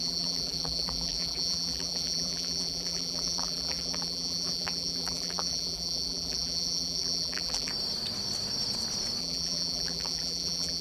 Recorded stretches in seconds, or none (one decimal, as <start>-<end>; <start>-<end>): 7.7-9.2